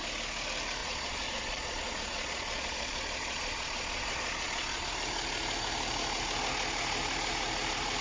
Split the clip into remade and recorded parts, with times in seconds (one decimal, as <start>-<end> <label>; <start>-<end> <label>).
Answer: 0.0-0.8 recorded; 0.8-4.9 remade; 4.9-8.0 recorded